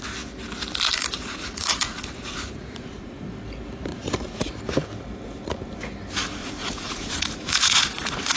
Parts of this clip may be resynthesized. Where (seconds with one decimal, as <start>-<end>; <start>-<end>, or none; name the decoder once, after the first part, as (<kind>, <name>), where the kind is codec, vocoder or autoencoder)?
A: 1.0-3.3 (vocoder, Vocos); 3.9-4.5; 6.4-8.4